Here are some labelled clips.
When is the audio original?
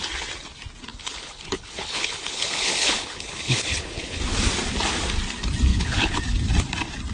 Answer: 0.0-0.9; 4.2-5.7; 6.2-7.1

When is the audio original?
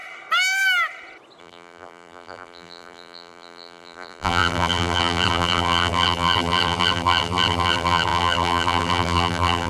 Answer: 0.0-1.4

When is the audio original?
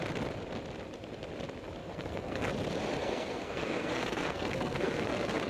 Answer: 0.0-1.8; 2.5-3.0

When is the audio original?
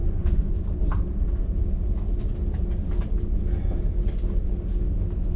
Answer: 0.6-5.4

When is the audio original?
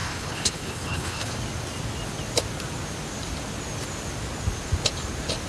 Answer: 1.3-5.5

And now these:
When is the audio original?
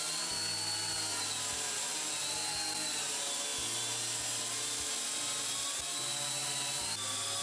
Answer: 0.0-7.4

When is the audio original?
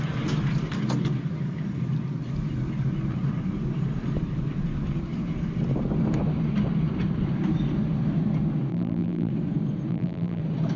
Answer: 0.0-8.7; 9.3-9.9; 10.4-10.8